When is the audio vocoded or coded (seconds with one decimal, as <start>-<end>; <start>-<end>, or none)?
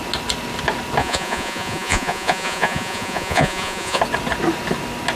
1.0-4.0